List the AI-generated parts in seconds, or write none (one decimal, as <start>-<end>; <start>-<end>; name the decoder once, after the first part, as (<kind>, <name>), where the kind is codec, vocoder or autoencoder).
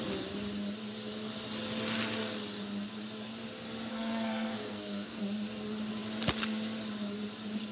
3.9-5.2 (codec, SNAC)